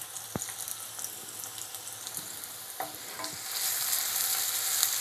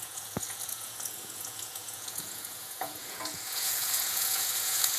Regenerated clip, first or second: second